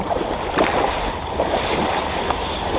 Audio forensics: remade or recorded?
recorded